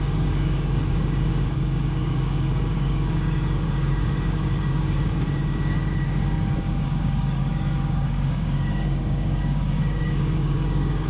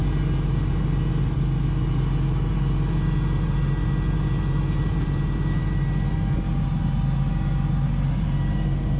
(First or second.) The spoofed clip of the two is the first